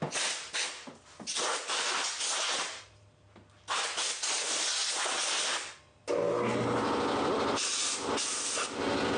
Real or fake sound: real